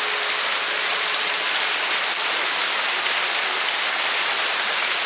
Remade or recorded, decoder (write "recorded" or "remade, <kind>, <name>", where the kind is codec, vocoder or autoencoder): recorded